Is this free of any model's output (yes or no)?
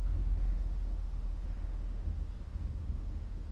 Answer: no